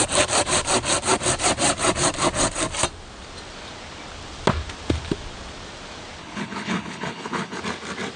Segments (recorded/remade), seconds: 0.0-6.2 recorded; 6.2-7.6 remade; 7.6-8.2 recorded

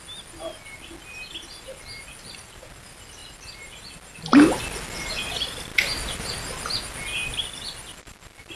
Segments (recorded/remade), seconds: 0.0-8.6 recorded

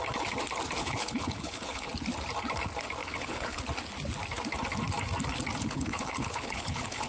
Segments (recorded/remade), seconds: 0.0-0.8 recorded; 0.8-1.9 remade; 1.9-3.0 recorded; 3.0-3.6 remade; 3.6-5.6 recorded; 5.6-7.1 remade

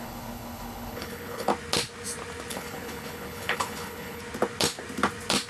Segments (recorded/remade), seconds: 0.0-1.5 remade; 1.5-2.5 recorded; 2.5-4.2 remade; 4.2-5.5 recorded